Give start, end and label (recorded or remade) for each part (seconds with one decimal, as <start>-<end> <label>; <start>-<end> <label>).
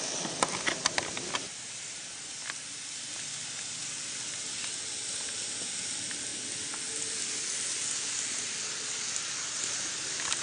0.0-10.4 recorded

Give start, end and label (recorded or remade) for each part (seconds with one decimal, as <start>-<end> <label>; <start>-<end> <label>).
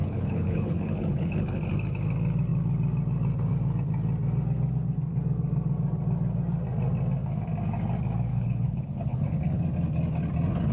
0.0-1.6 remade; 1.6-8.3 recorded; 8.3-9.6 remade; 9.6-10.7 recorded